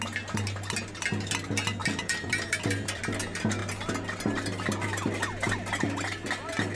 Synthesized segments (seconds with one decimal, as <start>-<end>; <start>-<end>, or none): 1.8-3.0